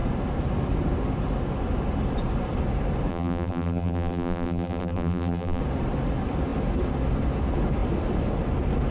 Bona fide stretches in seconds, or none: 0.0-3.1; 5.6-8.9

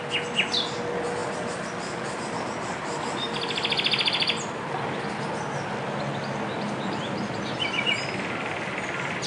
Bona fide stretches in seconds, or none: 0.0-1.2; 5.3-9.3

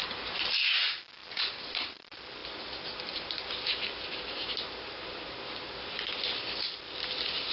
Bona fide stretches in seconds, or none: 0.6-1.2; 2.0-7.5

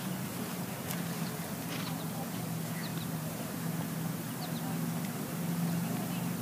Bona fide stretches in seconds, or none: 0.0-2.9; 3.8-6.4

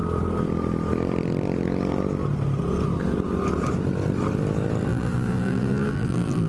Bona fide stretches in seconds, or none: 0.0-4.9

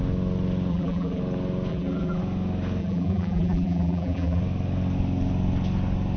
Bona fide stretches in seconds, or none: 0.0-0.7; 1.2-1.7; 2.2-2.8; 4.4-6.2

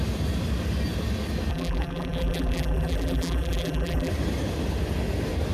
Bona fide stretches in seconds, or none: 0.0-1.5; 4.1-5.5

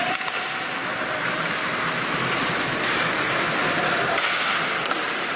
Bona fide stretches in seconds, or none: 3.6-5.0